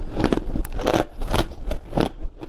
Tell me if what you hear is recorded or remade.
recorded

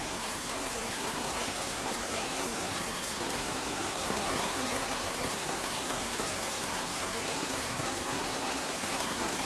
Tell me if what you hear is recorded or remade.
remade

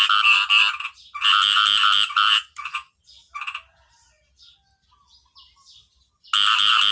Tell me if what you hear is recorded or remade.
recorded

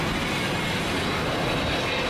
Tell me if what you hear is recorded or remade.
recorded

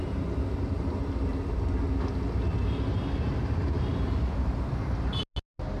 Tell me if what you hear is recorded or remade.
recorded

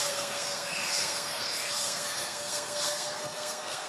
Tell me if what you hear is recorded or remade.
remade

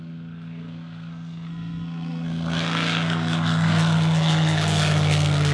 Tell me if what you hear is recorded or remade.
remade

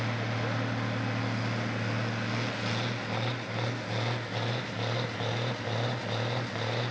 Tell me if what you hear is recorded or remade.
recorded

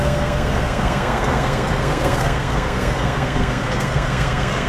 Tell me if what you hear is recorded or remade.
remade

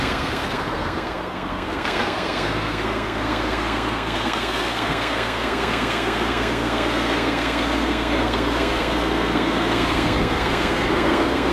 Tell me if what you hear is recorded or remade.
remade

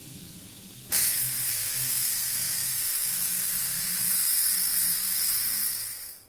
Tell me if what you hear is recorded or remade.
remade